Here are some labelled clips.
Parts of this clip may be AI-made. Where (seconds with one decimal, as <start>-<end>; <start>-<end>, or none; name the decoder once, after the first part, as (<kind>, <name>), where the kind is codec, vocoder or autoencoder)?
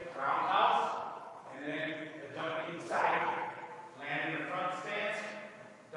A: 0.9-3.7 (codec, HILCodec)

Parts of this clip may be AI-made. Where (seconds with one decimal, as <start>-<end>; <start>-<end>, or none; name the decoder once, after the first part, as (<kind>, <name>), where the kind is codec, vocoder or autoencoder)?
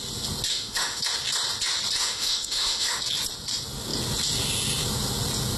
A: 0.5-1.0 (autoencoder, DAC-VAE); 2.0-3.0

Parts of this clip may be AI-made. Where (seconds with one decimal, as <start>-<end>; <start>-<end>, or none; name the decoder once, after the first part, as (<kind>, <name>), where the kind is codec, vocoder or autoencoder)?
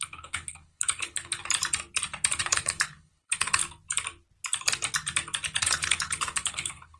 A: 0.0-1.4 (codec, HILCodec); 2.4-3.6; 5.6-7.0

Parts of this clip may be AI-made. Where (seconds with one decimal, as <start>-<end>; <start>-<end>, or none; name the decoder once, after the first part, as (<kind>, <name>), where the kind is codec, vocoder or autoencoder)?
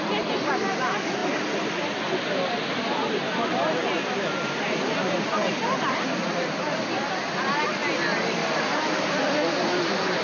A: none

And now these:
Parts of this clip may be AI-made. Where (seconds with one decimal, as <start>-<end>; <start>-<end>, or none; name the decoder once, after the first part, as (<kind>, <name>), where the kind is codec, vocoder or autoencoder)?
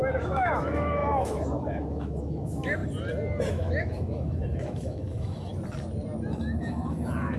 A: 0.0-2.8 (autoencoder, DAC-VAE); 3.5-5.5; 6.3-7.4